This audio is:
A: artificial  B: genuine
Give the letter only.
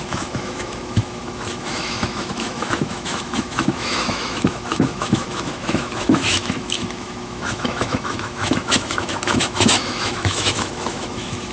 A